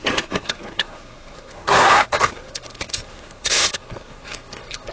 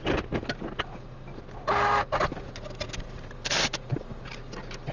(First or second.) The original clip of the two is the second